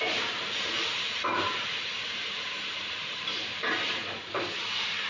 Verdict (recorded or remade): remade